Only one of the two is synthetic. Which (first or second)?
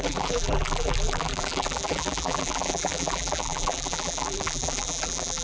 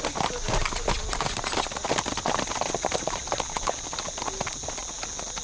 first